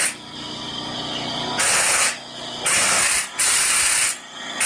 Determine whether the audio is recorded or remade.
recorded